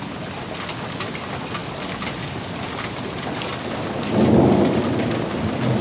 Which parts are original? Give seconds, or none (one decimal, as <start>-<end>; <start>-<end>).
0.0-5.8

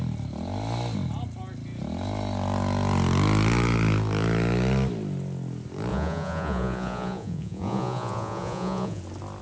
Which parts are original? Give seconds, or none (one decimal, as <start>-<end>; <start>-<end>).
0.0-5.9; 9.0-9.4

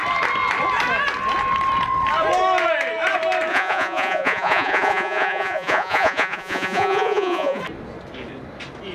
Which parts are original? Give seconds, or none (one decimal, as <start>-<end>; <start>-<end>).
0.0-3.5; 7.6-8.9